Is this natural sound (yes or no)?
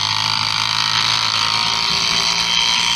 yes